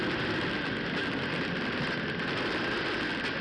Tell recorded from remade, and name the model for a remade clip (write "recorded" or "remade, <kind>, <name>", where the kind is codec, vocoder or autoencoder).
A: recorded